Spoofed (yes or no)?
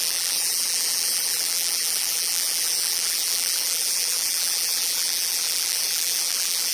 yes